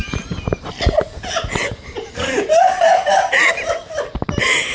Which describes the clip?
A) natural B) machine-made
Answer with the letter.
A